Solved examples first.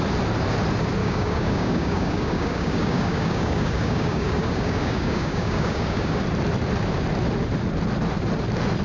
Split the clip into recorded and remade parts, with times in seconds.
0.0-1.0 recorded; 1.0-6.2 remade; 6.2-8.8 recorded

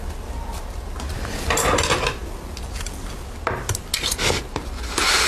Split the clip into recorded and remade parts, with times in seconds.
0.0-5.3 recorded

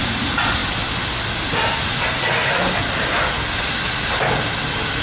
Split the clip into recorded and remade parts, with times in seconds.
0.0-5.0 recorded

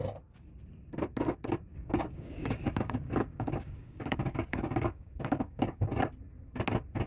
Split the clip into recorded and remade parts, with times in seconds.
0.0-1.7 recorded; 1.7-6.0 remade; 6.0-7.1 recorded